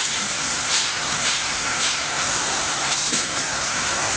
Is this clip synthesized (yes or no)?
yes